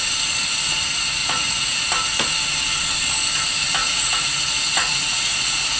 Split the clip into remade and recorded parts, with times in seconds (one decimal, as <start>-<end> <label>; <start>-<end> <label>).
0.0-1.2 recorded; 1.2-1.8 remade; 1.8-3.8 recorded; 3.8-5.8 remade